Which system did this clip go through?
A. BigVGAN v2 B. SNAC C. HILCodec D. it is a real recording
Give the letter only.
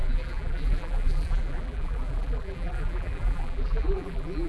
A